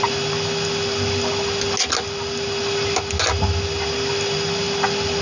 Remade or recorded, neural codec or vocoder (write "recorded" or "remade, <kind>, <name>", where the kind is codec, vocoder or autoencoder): recorded